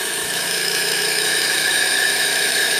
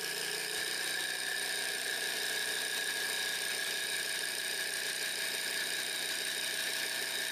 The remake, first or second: first